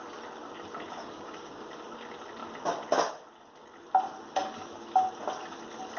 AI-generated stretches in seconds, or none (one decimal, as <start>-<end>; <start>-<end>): 1.0-1.6